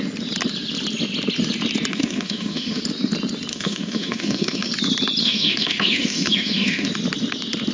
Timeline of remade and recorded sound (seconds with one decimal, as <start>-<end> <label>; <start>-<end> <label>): 0.0-1.9 recorded; 1.9-2.8 remade; 2.8-3.5 recorded; 3.5-4.7 remade; 4.7-5.2 recorded; 5.2-6.9 remade; 6.9-7.7 recorded